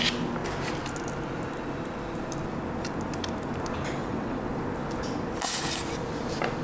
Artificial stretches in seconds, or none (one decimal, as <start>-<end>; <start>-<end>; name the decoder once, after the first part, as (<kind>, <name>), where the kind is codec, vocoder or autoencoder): 4.0-4.5 (vocoder, WaveNeXt)